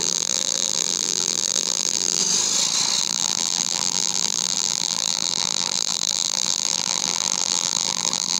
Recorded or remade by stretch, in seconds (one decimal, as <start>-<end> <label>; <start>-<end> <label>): 0.0-2.2 remade; 2.2-3.0 recorded; 3.0-8.4 remade